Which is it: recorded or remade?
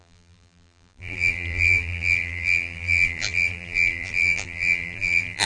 remade